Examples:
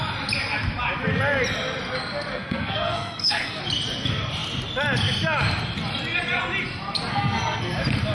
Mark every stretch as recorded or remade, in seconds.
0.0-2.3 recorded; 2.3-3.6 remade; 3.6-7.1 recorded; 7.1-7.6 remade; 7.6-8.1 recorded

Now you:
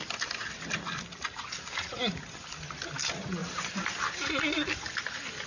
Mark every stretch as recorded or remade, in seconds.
0.0-3.4 recorded; 3.4-3.9 remade; 3.9-5.5 recorded